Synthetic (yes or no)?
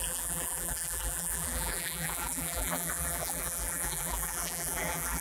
yes